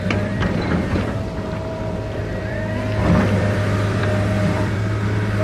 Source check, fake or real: fake